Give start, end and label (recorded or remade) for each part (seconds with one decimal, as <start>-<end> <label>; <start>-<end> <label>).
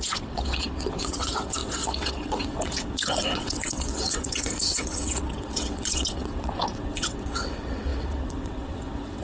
0.0-9.2 remade